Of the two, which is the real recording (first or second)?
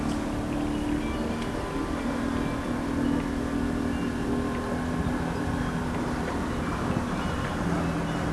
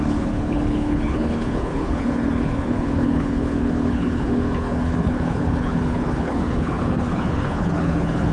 first